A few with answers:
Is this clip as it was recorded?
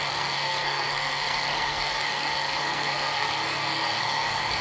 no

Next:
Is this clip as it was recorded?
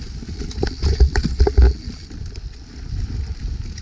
yes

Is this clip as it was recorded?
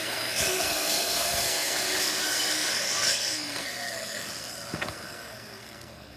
no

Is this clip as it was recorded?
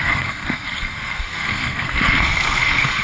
no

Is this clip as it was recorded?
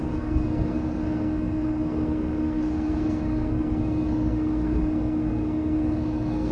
no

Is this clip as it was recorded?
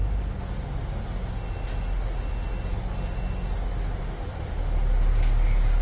yes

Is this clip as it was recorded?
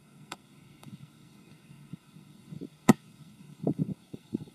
no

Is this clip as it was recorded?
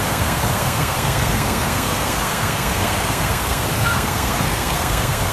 no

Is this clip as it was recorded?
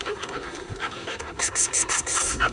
no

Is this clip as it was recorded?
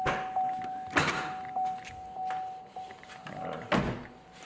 yes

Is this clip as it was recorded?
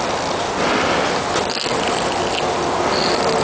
yes